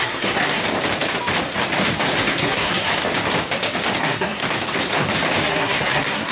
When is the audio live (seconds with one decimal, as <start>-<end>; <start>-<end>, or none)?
0.6-2.2; 2.9-4.0; 4.4-5.4